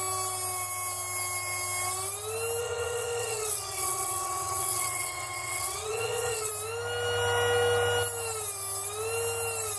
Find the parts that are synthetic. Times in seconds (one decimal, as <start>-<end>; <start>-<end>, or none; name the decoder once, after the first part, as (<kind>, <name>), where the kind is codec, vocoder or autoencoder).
2.6-6.5 (vocoder, WaveNeXt)